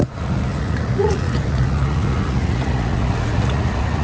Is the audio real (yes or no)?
no